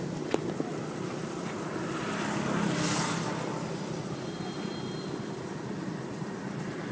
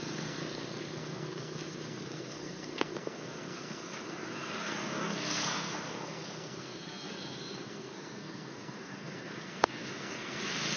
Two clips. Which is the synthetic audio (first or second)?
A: second